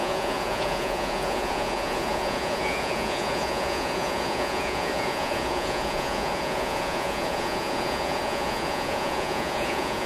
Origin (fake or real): fake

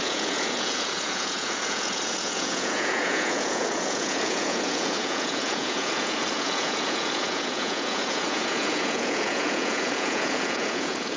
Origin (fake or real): fake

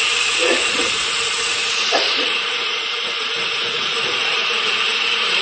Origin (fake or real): fake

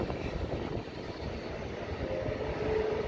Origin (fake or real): real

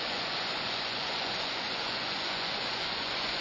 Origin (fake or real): fake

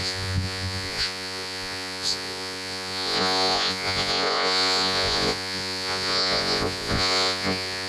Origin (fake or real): fake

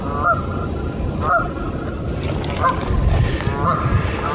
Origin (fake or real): real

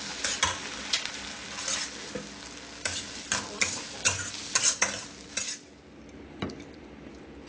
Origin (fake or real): real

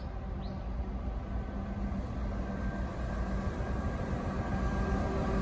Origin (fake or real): real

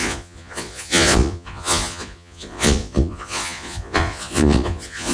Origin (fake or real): fake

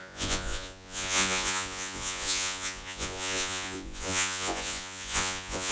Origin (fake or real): fake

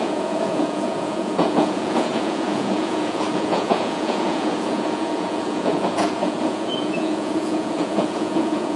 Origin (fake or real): fake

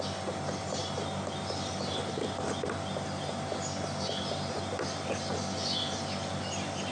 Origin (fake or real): real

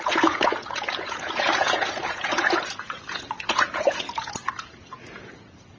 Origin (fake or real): fake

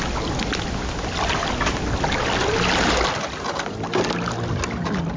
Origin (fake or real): real